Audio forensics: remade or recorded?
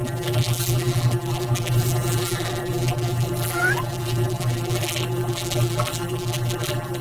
remade